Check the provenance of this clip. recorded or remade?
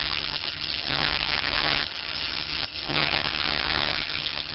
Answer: remade